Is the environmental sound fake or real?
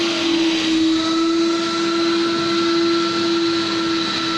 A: real